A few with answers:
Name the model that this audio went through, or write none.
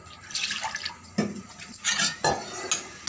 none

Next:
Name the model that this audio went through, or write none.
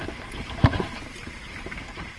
vocoder, BigVGAN v2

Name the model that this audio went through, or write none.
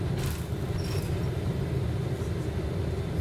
none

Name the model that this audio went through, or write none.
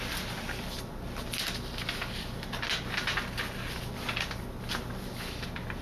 none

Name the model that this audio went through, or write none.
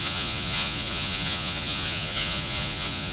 vocoder, Vocos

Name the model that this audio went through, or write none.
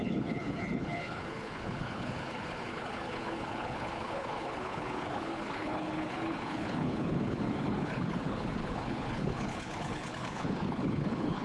codec, HILCodec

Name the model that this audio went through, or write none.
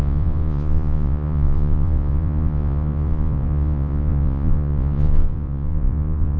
vocoder, Vocos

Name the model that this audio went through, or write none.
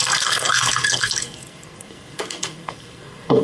codec, SNAC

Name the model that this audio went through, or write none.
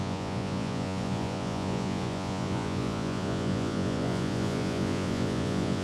vocoder, Vocos